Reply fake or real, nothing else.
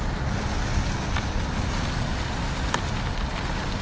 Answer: real